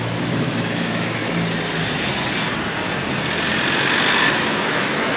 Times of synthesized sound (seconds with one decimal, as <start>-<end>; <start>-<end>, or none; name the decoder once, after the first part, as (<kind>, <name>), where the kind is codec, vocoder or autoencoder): 0.0-1.2 (autoencoder, DAC-VAE); 4.3-5.2